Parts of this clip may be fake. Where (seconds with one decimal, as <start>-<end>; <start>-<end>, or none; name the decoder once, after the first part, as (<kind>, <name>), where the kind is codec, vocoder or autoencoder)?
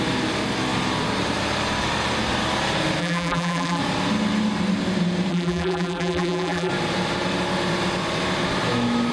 3.0-3.8 (vocoder, BigVGAN v2); 5.3-6.7